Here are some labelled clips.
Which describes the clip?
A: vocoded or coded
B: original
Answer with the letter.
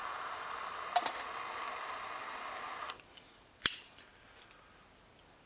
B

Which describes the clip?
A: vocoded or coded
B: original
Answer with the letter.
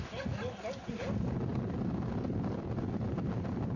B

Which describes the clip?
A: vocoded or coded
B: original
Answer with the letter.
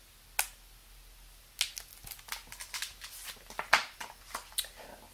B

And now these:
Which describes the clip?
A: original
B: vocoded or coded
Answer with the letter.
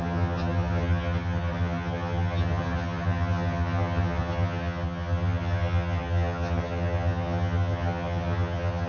B